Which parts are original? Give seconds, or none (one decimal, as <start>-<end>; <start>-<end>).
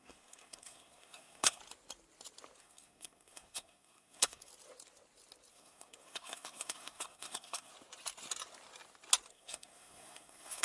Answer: 1.6-2.6; 4.5-5.5; 7.7-9.3